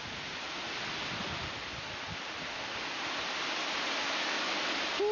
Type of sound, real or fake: real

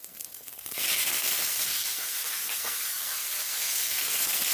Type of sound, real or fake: fake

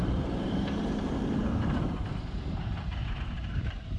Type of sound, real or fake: fake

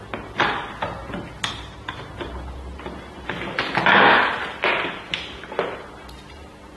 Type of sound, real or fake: real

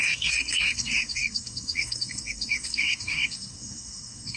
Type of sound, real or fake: fake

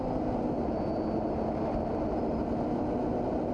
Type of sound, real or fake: real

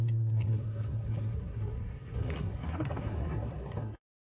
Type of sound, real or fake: fake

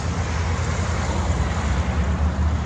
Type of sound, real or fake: real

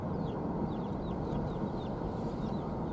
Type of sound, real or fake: fake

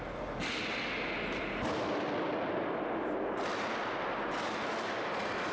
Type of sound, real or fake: real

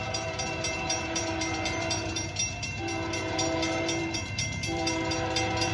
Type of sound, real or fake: fake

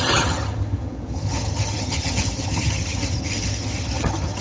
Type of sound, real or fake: fake